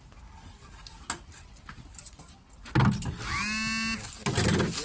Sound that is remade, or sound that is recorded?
recorded